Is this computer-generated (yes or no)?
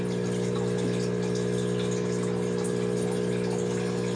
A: no